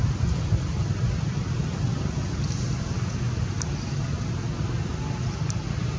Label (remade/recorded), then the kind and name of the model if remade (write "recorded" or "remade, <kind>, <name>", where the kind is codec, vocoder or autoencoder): recorded